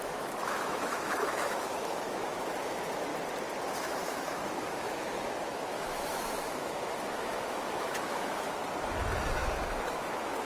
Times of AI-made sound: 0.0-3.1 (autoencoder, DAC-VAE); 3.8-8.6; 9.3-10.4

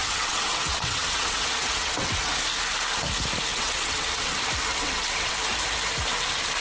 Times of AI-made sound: 0.0-2.3 (vocoder, WaveNeXt); 3.5-4.3; 4.7-5.3

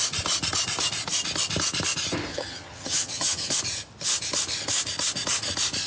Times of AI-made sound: 2.3-3.6 (vocoder, HiFi-GAN)